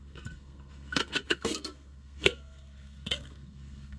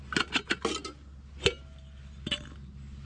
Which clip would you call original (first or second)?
second